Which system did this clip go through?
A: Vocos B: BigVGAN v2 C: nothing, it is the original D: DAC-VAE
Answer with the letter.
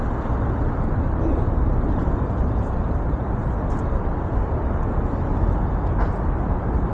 B